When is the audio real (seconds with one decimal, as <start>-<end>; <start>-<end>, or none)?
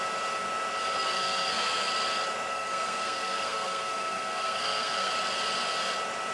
0.0-0.8; 1.9-2.5; 5.1-6.3